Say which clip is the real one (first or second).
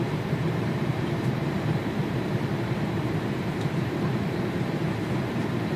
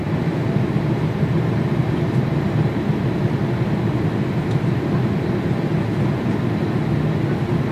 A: second